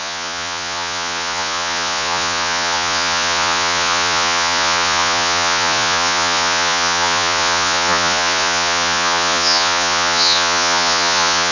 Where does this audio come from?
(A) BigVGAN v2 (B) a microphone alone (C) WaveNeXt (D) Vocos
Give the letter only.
D